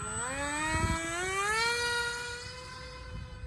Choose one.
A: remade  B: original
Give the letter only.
B